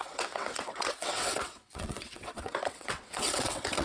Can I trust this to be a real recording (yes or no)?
no